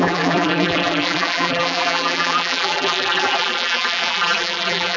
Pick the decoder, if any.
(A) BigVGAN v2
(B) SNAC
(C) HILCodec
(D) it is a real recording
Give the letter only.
A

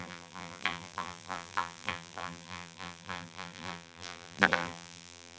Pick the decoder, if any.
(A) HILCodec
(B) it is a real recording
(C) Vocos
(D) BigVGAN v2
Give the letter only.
D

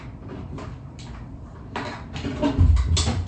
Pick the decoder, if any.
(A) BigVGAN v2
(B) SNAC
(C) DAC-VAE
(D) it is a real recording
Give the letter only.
D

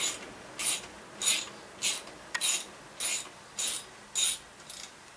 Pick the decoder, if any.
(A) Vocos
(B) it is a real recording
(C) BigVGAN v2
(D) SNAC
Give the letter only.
B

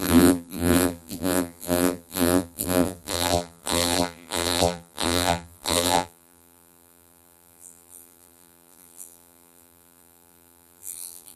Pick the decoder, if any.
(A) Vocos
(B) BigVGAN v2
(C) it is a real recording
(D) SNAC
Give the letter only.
B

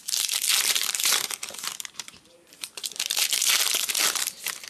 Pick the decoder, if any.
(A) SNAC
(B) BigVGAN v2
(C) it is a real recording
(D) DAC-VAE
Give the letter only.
B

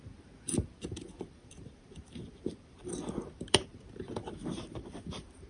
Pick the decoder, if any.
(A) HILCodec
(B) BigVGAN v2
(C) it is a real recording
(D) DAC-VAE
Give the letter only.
B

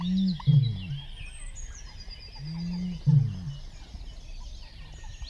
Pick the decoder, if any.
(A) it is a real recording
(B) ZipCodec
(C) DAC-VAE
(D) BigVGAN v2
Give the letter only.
A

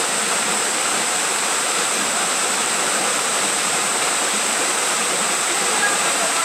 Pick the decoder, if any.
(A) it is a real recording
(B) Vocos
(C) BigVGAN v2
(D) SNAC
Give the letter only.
C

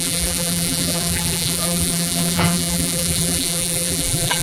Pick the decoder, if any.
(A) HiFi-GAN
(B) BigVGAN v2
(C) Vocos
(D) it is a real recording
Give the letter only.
B